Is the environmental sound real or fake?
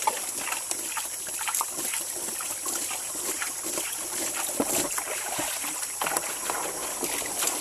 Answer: real